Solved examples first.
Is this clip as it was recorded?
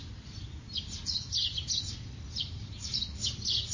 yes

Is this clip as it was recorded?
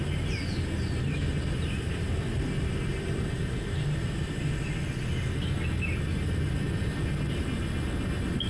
yes